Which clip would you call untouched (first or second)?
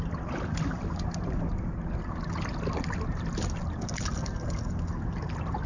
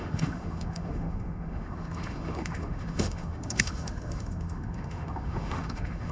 first